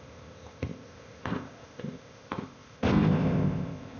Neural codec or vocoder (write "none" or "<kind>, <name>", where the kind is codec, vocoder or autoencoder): codec, ZipCodec